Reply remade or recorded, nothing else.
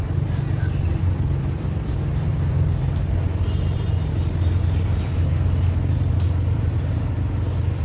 recorded